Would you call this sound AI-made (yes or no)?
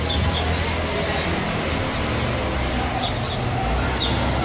no